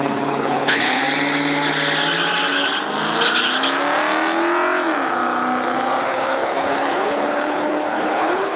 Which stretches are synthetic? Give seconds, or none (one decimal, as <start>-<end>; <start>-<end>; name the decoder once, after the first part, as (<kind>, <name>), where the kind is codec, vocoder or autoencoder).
0.0-1.0 (codec, HILCodec); 6.0-8.6